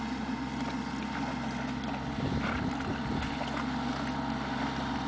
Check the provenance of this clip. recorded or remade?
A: recorded